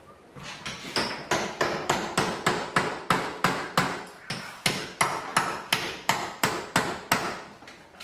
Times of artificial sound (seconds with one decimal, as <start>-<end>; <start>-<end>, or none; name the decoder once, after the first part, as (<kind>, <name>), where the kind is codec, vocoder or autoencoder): 5.3-6.5 (vocoder, BigVGAN v2)